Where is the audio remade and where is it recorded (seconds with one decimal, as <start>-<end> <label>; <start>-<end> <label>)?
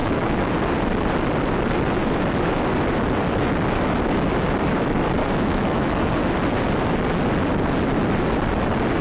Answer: 0.0-0.5 remade; 0.5-5.2 recorded; 5.2-6.1 remade; 6.1-9.0 recorded